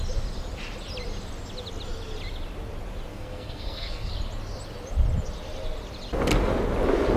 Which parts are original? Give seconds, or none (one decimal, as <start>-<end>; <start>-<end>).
0.0-3.1; 4.1-7.2